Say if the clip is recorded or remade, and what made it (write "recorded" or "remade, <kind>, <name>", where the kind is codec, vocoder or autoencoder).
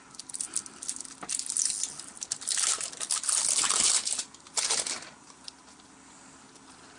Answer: recorded